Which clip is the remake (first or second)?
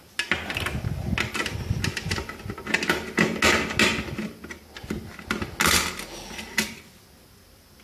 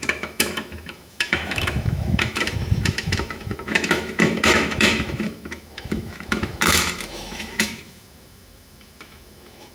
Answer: second